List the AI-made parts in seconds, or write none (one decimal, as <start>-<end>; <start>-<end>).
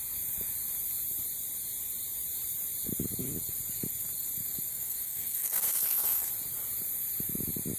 4.7-6.3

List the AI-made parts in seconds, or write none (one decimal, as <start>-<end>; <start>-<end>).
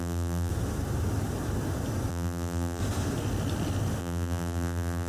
0.0-0.5; 2.1-2.8; 4.0-5.1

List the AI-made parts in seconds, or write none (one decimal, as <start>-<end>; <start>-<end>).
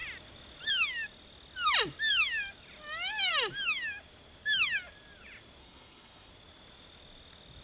5.6-6.3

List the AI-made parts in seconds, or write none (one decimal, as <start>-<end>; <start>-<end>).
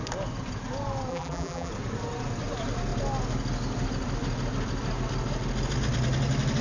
1.1-1.7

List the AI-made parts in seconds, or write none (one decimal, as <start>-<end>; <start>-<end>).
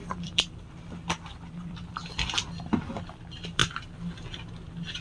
0.0-3.6; 4.5-5.0